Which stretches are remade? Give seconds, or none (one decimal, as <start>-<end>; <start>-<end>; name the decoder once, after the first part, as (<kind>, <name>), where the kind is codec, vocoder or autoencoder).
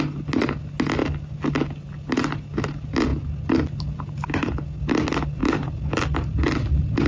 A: none